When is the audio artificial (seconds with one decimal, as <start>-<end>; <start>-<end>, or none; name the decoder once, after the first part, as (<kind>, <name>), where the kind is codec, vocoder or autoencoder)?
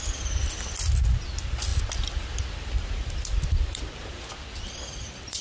none